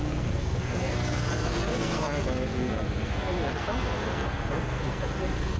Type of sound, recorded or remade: remade